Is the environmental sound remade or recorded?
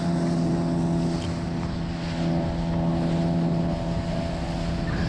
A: recorded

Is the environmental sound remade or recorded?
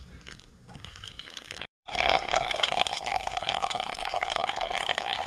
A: remade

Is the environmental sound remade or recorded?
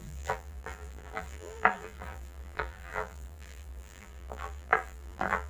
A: remade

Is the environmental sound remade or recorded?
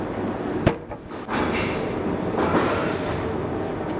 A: recorded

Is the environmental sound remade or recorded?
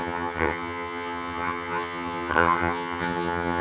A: remade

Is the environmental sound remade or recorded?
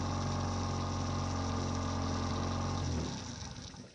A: recorded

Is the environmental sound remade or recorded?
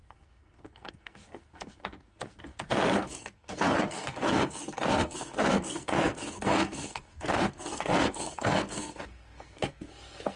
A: remade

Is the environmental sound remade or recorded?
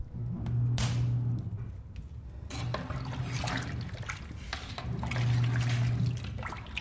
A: recorded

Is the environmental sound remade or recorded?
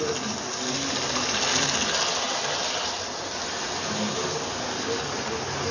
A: recorded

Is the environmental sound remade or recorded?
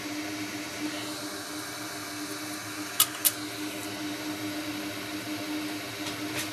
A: recorded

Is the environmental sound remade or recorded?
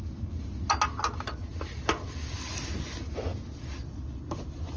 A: recorded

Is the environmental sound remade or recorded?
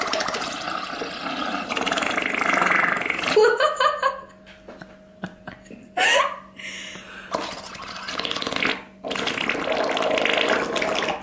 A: recorded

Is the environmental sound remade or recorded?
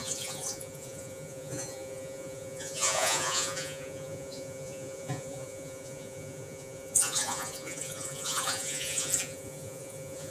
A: remade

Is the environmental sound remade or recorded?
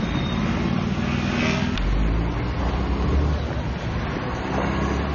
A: recorded